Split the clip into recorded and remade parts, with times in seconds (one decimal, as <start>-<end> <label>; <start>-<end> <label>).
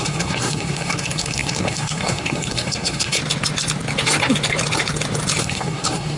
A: 0.0-3.2 remade; 3.2-5.4 recorded; 5.4-6.2 remade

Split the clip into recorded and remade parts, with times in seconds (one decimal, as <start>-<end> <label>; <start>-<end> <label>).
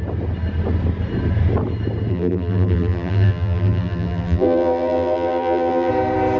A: 0.0-2.1 recorded; 2.1-5.9 remade; 5.9-6.4 recorded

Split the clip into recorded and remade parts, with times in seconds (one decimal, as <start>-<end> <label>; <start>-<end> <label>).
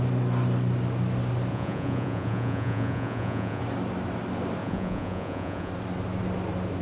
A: 0.0-1.5 recorded; 1.5-3.6 remade; 3.6-4.6 recorded; 4.6-5.7 remade; 5.7-6.8 recorded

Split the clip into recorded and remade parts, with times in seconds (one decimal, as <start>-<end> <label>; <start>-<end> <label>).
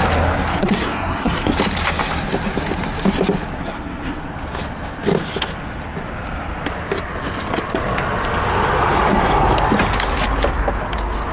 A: 0.0-0.5 recorded; 0.5-1.5 remade; 1.5-3.6 recorded; 3.6-4.2 remade; 4.2-11.3 recorded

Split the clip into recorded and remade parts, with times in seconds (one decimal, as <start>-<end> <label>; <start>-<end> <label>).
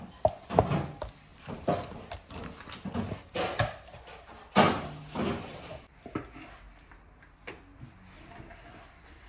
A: 0.0-1.3 recorded; 1.3-2.4 remade; 2.4-7.7 recorded; 7.7-9.3 remade